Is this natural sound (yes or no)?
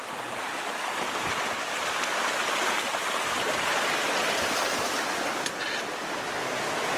yes